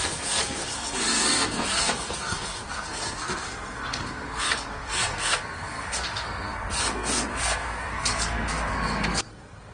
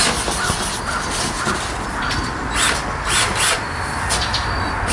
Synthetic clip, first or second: first